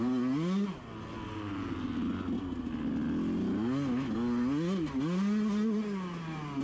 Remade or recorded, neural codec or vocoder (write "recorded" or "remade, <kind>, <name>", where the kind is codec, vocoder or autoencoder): recorded